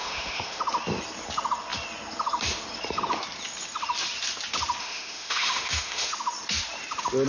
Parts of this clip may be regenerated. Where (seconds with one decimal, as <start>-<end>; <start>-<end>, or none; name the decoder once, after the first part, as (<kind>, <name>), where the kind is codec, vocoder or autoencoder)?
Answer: 0.0-0.6 (autoencoder, DAC-VAE); 4.8-6.1